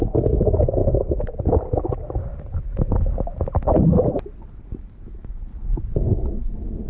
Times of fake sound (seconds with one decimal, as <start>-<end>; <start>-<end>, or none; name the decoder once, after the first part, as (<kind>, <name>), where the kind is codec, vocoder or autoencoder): 0.0-0.8 (autoencoder, DAC-VAE); 4.8-5.5; 6.1-6.9